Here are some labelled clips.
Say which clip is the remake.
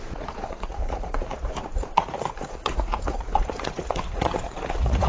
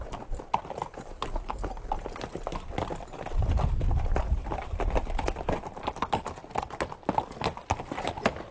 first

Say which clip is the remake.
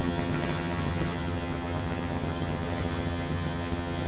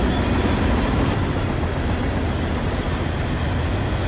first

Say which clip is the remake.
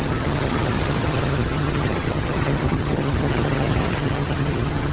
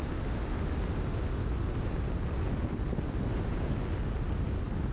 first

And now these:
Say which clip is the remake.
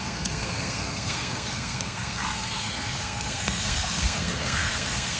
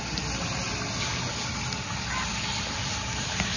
first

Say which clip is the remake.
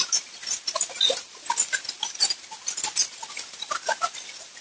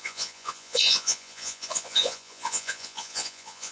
second